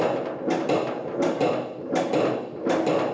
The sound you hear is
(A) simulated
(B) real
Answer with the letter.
B